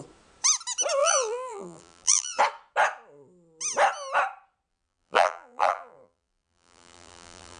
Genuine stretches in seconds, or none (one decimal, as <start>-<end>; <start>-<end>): 0.0-1.0; 2.4-4.7

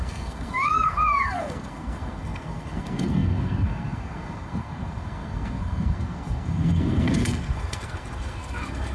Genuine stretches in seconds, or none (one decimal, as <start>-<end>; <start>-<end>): none

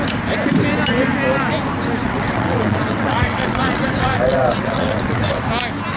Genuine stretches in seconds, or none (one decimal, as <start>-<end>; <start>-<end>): 0.0-2.0; 5.4-6.0